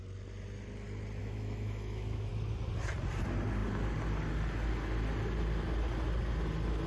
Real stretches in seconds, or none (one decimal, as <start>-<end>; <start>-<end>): 0.0-1.2; 2.3-6.9